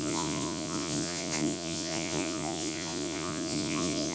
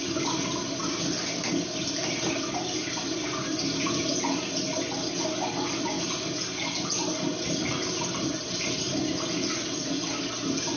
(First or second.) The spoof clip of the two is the first